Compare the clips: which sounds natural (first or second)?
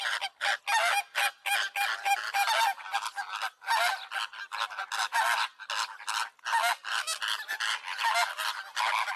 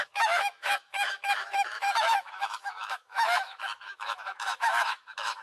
first